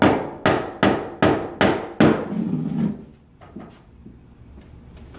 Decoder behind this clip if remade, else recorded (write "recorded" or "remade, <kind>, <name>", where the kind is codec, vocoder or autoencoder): recorded